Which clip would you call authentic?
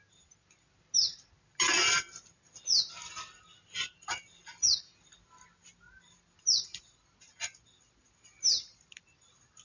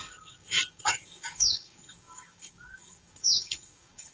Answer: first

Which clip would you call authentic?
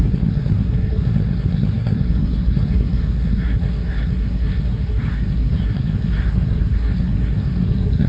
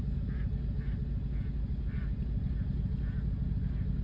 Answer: second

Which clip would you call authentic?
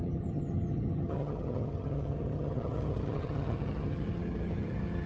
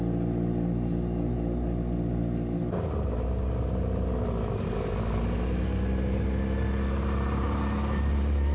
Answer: second